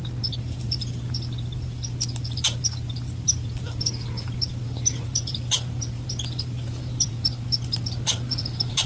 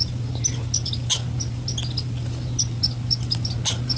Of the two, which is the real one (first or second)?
second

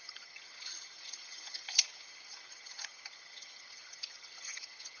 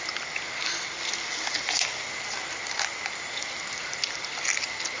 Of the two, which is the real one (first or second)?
second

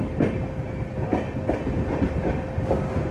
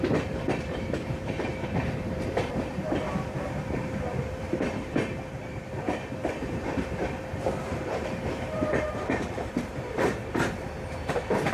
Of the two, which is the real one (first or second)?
first